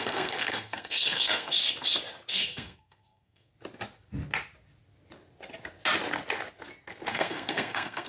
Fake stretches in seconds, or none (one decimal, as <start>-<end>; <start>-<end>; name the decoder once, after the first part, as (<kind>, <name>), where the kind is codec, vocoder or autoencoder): 0.0-1.6 (codec, SNAC); 2.3-3.5; 7.1-8.1